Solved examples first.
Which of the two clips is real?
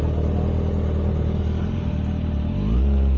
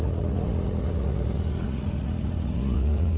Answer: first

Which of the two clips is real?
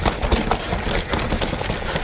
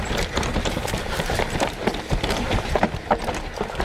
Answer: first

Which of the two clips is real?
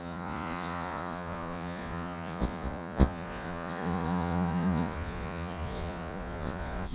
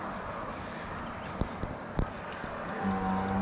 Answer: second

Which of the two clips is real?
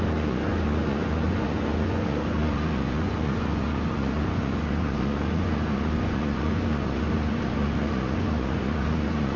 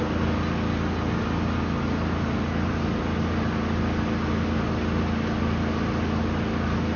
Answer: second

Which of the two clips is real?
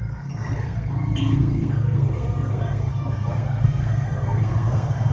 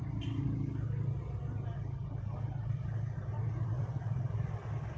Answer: second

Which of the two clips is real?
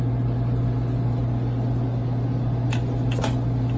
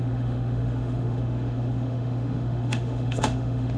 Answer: first